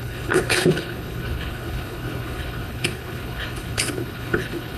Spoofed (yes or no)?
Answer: yes